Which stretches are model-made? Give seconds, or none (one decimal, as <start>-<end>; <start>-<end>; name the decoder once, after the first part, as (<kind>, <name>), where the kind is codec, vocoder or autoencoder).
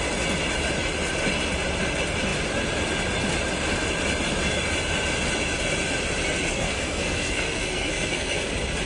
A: 6.5-8.5 (codec, SNAC)